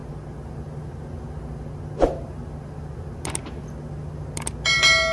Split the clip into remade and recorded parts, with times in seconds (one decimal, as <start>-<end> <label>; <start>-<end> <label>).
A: 0.0-5.1 recorded